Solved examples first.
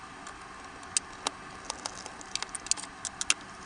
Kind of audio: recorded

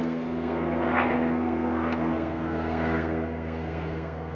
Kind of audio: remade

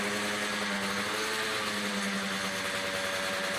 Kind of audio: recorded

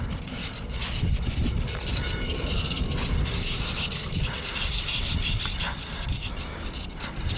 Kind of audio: recorded